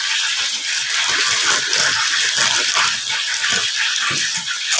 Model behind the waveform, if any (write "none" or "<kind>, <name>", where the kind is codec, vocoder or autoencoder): none